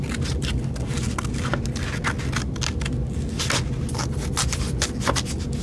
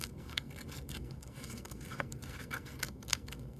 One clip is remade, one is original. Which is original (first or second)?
first